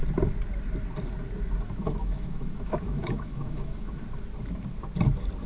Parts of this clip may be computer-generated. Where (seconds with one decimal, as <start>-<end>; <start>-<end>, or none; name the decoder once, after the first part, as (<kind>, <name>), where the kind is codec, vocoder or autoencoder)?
2.0-4.0 (autoencoder, DAC-VAE)